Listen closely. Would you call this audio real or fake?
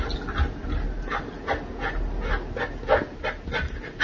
real